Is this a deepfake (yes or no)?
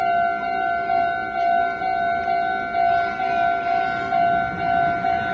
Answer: no